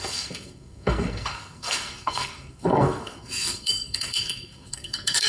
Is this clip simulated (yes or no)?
yes